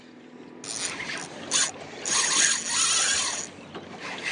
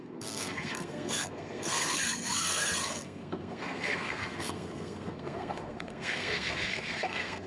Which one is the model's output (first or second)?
second